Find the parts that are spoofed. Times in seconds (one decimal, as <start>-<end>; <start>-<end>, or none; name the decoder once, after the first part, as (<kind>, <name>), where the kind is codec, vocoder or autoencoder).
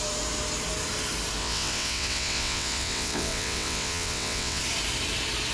1.4-4.6 (vocoder, WaveNeXt)